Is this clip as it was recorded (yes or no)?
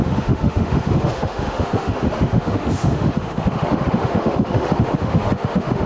no